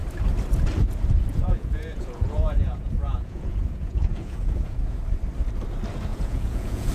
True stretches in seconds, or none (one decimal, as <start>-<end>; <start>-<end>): 0.0-1.3; 5.0-6.1